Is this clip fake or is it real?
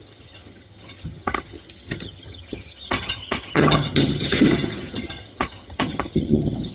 fake